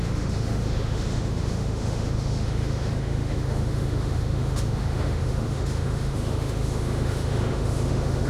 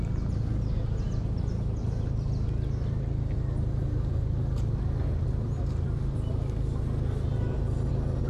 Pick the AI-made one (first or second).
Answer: first